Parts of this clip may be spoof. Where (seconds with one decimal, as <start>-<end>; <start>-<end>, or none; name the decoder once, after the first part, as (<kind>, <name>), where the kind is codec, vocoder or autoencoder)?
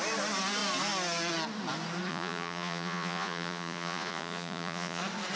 2.1-5.0 (vocoder, Vocos)